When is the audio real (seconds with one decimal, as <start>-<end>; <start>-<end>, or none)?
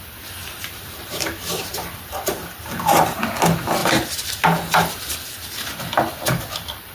0.0-0.4; 3.2-3.8; 4.3-6.9